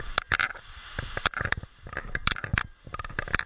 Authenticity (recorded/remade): recorded